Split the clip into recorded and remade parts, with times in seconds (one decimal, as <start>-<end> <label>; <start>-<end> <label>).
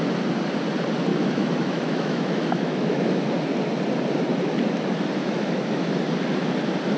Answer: 0.0-1.1 recorded; 1.1-3.3 remade; 3.3-5.2 recorded; 5.2-5.9 remade; 5.9-7.0 recorded